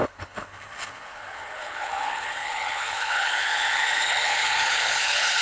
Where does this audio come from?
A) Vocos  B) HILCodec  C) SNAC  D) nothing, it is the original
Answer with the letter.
B